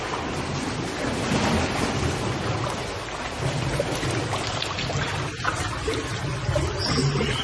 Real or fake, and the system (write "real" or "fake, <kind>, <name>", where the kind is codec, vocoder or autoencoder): real